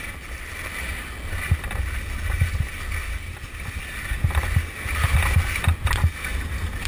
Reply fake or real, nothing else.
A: real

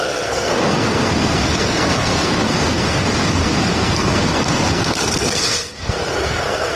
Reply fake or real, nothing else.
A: fake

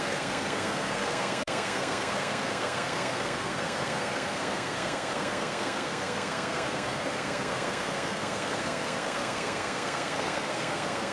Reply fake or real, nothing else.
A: fake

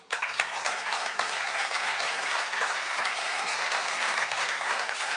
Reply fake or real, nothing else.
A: fake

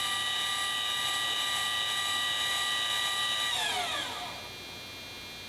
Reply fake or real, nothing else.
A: real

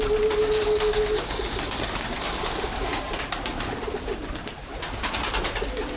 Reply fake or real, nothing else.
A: real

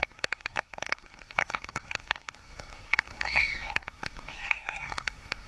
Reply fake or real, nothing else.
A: fake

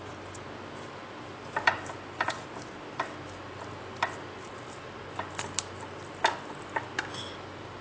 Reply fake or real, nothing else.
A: real